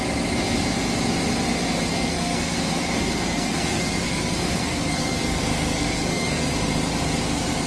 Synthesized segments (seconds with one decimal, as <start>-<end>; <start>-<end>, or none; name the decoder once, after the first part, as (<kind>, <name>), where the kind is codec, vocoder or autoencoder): 1.9-6.5 (codec, SNAC)